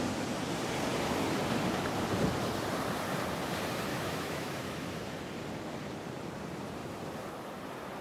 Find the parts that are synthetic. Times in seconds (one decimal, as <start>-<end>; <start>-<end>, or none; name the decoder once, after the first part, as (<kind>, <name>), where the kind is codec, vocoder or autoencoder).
3.9-5.1 (autoencoder, DAC-VAE)